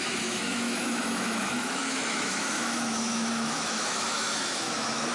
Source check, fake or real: fake